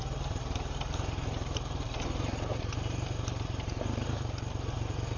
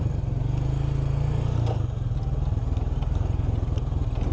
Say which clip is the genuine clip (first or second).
second